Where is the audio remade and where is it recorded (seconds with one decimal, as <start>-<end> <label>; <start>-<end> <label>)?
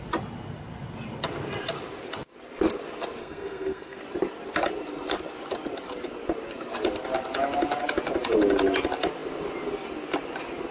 0.0-3.2 recorded; 3.2-4.0 remade; 4.0-10.7 recorded